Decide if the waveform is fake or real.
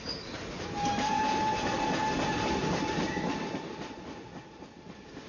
real